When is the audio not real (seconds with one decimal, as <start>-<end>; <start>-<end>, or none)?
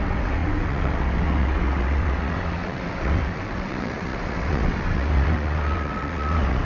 0.0-6.6